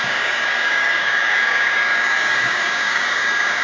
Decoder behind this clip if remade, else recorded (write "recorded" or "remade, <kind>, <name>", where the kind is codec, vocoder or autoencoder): remade, codec, DAC